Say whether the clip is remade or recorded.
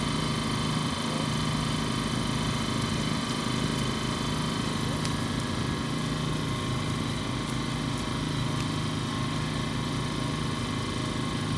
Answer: recorded